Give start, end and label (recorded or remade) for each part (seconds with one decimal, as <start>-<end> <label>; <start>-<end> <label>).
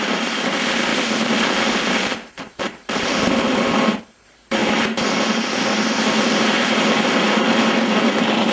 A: 0.0-0.9 remade; 0.9-2.3 recorded; 2.3-4.6 remade; 4.6-5.5 recorded; 5.5-8.5 remade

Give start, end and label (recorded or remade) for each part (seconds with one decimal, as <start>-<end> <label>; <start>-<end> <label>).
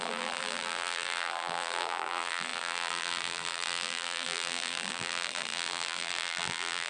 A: 0.0-6.9 remade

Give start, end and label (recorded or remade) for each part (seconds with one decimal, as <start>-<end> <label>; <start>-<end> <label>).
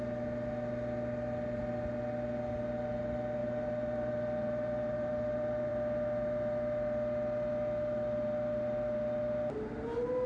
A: 0.0-3.4 recorded; 3.4-5.7 remade; 5.7-10.3 recorded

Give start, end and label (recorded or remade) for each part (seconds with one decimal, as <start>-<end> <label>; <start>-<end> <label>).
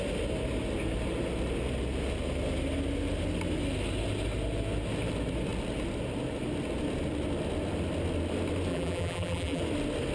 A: 0.0-8.7 recorded; 8.7-9.6 remade; 9.6-10.1 recorded